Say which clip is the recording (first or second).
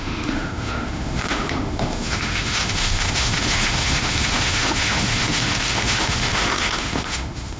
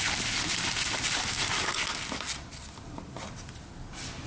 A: second